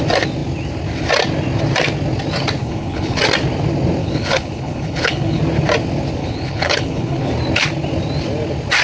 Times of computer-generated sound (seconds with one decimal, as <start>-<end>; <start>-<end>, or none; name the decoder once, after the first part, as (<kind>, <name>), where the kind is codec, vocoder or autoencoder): 2.6-3.2 (codec, HILCodec); 4.0-5.4; 6.2-7.3